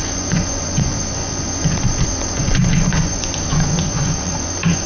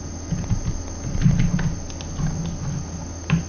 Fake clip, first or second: first